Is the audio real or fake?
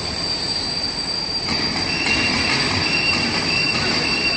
fake